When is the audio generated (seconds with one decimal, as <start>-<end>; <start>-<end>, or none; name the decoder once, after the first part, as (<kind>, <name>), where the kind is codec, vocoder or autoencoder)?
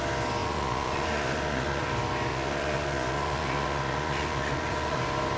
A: 0.4-1.9 (vocoder, Vocos); 2.3-5.0